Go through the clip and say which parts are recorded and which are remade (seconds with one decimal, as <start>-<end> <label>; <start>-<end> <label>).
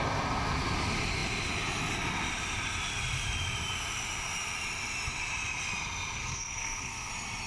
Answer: 0.0-6.2 recorded; 6.2-7.1 remade; 7.1-7.5 recorded